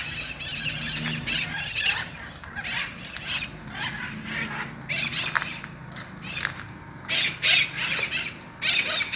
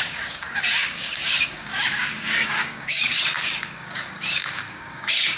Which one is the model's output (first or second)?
second